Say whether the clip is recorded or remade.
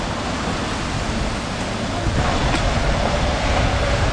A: recorded